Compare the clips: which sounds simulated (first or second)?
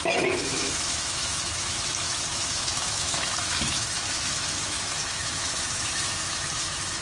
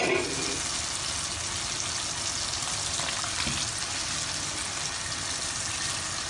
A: first